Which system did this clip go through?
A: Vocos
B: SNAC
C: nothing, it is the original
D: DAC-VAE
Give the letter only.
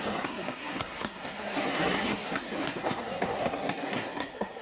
B